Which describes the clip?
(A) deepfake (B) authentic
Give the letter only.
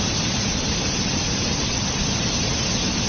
B